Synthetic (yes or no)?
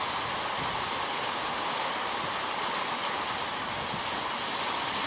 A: no